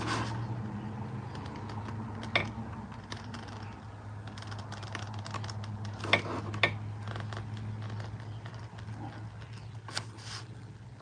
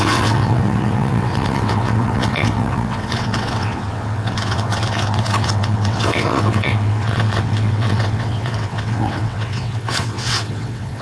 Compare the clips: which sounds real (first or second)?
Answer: first